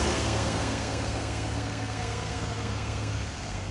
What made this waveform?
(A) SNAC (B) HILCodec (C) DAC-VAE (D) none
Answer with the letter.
A